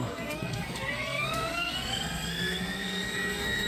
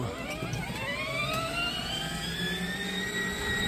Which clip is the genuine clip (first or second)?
second